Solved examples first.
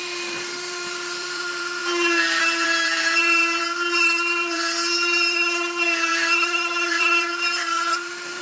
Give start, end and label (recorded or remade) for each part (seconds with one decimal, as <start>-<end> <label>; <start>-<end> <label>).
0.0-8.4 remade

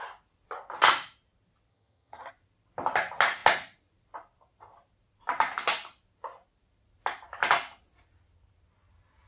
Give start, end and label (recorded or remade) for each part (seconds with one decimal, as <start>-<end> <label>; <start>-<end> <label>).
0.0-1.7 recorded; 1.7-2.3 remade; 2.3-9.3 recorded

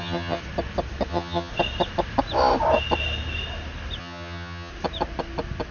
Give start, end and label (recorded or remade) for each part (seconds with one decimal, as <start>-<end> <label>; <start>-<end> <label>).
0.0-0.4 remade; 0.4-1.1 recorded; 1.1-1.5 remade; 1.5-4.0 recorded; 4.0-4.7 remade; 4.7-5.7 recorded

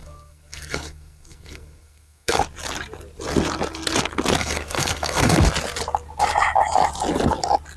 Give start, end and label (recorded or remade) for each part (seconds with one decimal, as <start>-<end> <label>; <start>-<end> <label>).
0.0-2.4 remade; 2.4-4.4 recorded; 4.4-5.4 remade; 5.4-7.8 recorded